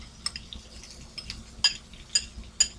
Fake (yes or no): no